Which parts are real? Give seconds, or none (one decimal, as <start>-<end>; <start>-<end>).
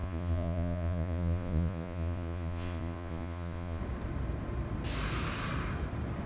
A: 3.8-6.3